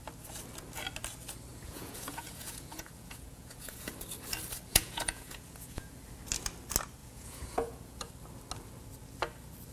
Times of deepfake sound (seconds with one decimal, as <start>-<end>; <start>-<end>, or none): 1.5-3.9; 4.7-5.9; 7.0-8.1